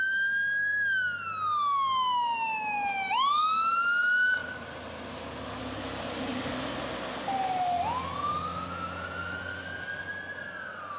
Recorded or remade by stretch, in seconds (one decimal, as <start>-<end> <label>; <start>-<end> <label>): 0.0-11.0 recorded